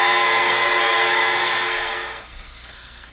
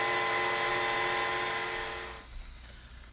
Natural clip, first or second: second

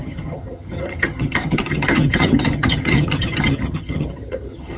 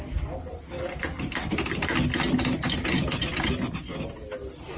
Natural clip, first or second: second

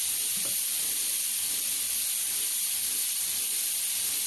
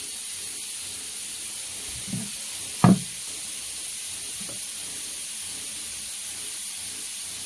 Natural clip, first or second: second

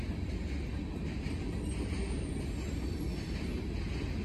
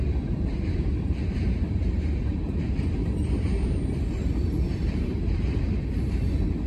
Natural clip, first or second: first